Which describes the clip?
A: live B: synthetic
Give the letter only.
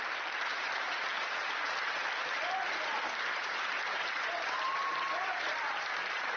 B